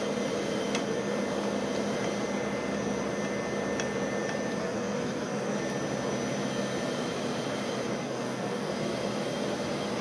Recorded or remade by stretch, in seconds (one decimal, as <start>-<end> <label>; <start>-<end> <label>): 0.0-4.6 recorded; 4.6-5.6 remade; 5.6-8.0 recorded; 8.0-8.7 remade; 8.7-10.0 recorded